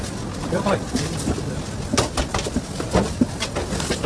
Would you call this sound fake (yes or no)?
no